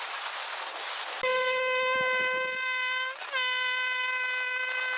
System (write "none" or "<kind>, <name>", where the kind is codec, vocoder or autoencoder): none